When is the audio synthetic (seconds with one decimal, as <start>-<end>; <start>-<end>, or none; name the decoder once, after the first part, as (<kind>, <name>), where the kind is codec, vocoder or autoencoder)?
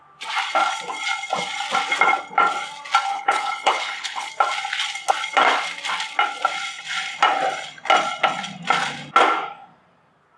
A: 3.1-4.3 (codec, HILCodec)